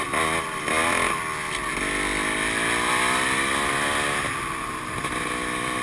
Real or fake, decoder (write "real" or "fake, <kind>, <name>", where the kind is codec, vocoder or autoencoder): real